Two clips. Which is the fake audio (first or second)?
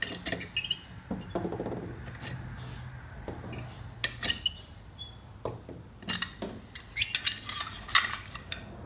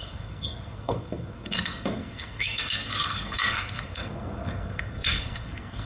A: second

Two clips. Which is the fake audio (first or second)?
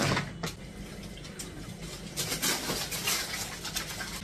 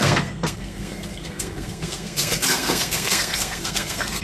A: second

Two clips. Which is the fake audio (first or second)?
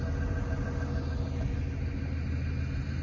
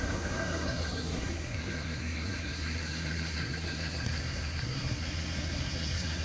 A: second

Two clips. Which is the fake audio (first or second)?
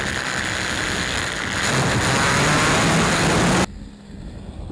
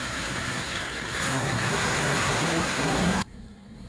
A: second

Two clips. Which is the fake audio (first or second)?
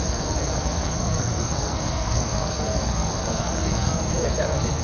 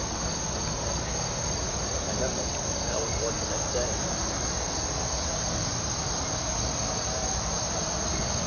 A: first